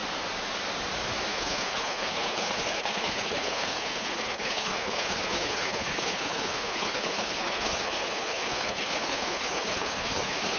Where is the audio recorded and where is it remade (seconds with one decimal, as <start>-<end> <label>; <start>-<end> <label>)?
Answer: 0.0-1.3 recorded; 1.3-10.6 remade

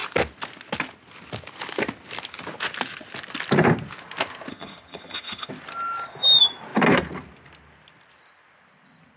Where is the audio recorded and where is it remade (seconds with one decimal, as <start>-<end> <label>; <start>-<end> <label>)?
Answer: 0.0-4.5 recorded; 4.5-5.5 remade; 5.5-9.2 recorded

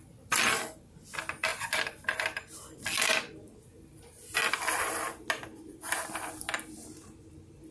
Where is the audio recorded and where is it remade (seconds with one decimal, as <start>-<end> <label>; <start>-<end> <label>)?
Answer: 0.0-7.7 recorded

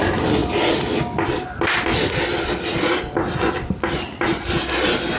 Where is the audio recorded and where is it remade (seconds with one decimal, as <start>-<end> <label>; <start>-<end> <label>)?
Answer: 0.0-5.2 recorded